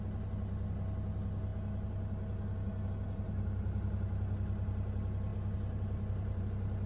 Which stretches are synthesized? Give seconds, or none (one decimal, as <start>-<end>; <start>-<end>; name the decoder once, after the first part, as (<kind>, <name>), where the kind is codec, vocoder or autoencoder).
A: none